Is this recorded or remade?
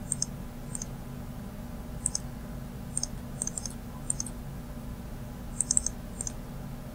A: recorded